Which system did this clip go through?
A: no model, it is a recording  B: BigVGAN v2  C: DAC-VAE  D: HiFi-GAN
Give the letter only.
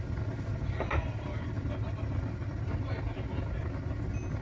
A